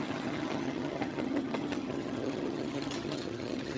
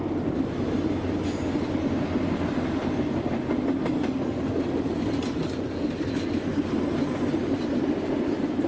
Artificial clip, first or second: first